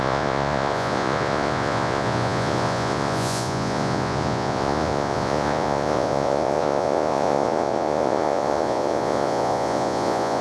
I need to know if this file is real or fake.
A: fake